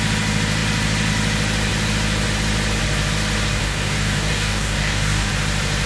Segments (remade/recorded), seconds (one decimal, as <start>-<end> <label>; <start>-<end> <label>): 0.0-3.6 recorded; 3.6-5.3 remade; 5.3-5.9 recorded